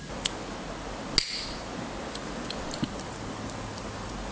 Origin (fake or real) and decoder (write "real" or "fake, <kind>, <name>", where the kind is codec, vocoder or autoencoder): real